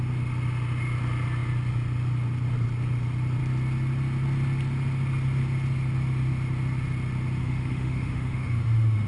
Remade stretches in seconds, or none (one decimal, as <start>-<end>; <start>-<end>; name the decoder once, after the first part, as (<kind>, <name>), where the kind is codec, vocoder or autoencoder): 7.4-9.1 (autoencoder, DAC-VAE)